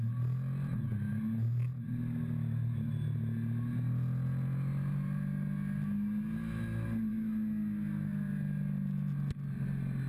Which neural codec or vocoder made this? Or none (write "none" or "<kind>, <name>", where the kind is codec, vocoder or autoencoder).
none